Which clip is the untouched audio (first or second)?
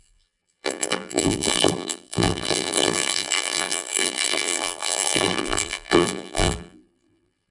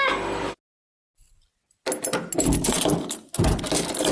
second